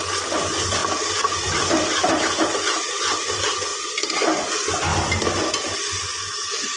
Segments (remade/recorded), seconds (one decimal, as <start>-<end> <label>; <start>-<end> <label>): 0.0-0.8 recorded; 0.8-2.2 remade; 2.2-3.7 recorded; 3.7-4.5 remade; 4.5-6.8 recorded